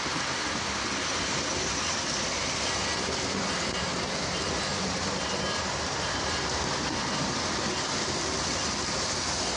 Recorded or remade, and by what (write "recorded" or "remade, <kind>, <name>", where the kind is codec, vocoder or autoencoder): recorded